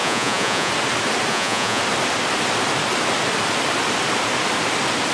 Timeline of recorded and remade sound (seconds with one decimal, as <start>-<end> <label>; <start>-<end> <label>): 0.0-0.7 remade; 0.7-1.3 recorded; 1.3-1.8 remade; 1.8-5.1 recorded